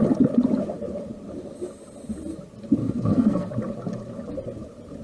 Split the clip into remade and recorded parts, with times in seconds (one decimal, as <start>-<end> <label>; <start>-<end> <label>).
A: 0.0-2.8 recorded; 2.8-3.5 remade; 3.5-5.0 recorded